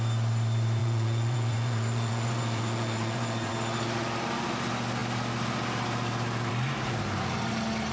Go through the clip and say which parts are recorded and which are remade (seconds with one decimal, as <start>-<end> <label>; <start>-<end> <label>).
0.0-0.8 recorded; 0.8-3.5 remade; 3.5-7.9 recorded